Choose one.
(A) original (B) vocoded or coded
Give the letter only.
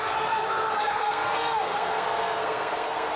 B